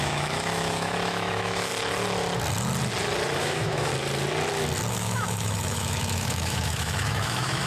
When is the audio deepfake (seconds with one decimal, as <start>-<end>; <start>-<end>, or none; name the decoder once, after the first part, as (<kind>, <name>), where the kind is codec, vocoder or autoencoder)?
0.0-1.7 (autoencoder, DAC-VAE); 3.4-3.9; 4.9-7.7